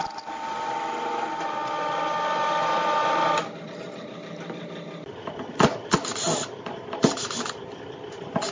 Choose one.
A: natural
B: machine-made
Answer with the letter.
A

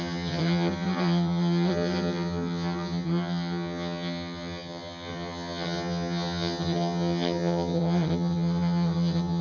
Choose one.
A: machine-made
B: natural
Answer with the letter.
A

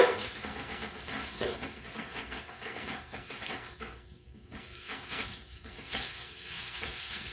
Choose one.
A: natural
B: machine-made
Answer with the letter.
B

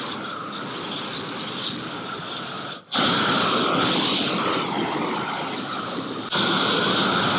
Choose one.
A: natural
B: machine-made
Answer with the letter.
A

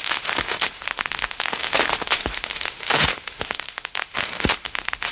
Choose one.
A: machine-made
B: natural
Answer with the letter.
A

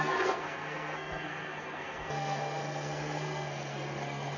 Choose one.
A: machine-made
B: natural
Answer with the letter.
A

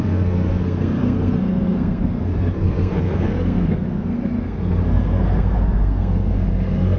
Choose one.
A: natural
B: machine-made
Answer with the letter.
B